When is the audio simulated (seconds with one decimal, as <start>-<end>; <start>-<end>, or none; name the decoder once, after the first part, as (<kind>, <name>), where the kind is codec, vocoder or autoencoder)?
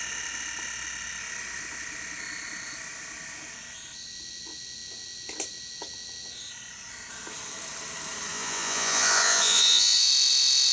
8.3-10.1 (vocoder, Vocos)